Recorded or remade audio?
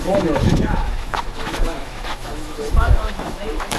remade